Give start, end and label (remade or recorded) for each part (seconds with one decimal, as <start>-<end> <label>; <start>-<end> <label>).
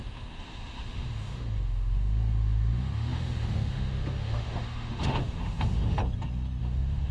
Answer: 0.0-6.0 remade; 6.0-6.6 recorded; 6.6-7.1 remade